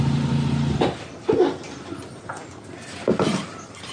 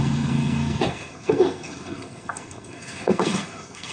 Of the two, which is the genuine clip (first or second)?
first